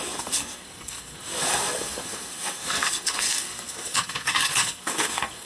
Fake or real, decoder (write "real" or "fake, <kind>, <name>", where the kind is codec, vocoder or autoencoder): fake, codec, SNAC